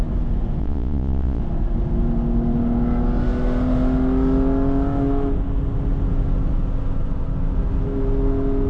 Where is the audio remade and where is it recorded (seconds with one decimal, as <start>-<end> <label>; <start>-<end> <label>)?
0.0-0.6 recorded; 0.6-1.4 remade; 1.4-8.7 recorded